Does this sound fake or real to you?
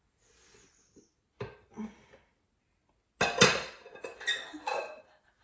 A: real